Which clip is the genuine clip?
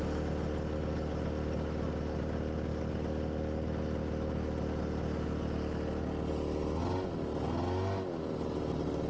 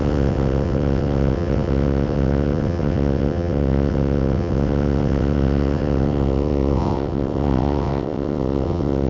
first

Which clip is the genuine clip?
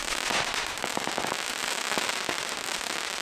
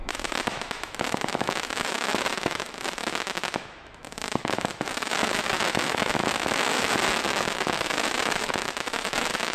first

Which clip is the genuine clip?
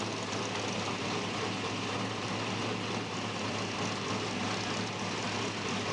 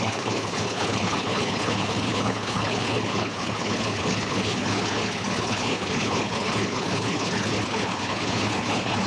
first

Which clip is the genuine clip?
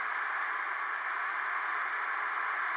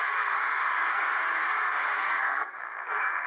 first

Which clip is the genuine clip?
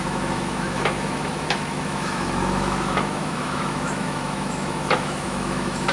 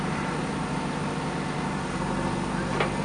second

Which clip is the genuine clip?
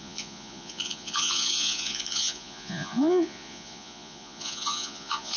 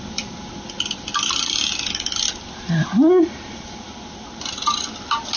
second